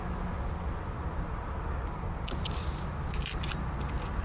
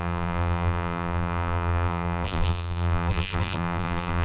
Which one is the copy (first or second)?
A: second